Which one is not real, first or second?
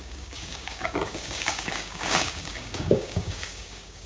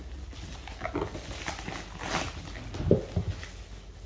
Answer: first